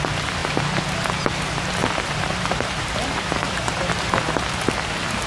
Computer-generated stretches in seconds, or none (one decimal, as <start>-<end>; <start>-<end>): 1.8-4.6